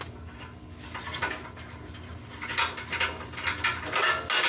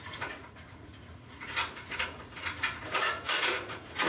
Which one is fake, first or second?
second